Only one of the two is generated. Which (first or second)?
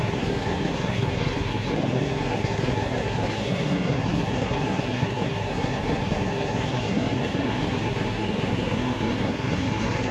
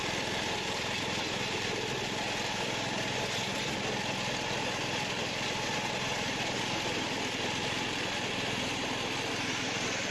first